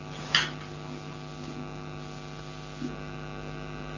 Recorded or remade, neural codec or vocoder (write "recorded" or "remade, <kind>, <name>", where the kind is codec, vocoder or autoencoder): recorded